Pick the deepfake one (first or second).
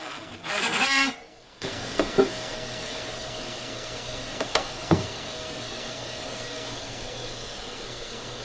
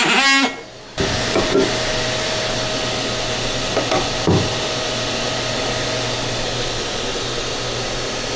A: first